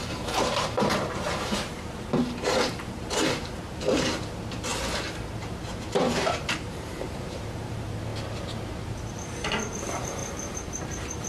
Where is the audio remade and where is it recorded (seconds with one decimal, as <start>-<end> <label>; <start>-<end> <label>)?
0.0-4.7 remade; 4.7-5.6 recorded; 5.6-8.1 remade; 8.1-9.1 recorded; 9.1-11.3 remade